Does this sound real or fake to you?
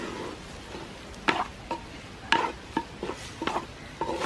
real